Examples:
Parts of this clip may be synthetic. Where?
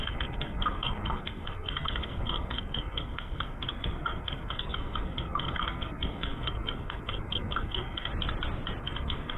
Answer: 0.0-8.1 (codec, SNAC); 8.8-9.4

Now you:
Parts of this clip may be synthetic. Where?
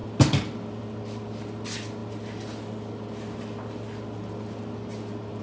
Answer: none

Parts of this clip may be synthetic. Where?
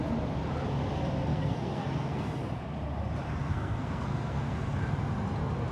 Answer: 1.3-2.4 (codec, SNAC); 3.4-4.7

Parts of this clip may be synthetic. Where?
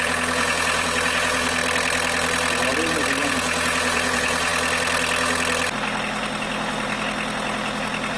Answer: 0.0-1.6 (vocoder, Vocos); 3.2-4.5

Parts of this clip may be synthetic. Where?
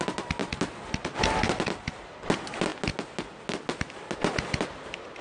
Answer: none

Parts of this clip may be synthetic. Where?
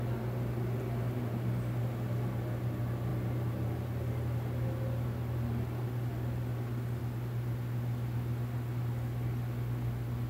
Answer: 3.1-7.0 (vocoder, BigVGAN v2)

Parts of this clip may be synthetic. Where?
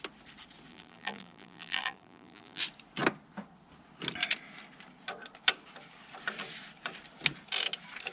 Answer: 0.7-2.6 (vocoder, BigVGAN v2)